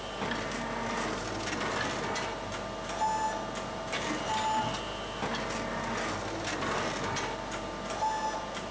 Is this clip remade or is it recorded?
recorded